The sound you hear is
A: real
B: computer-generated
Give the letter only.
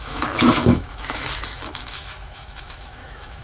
B